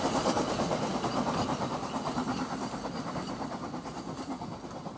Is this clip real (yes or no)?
yes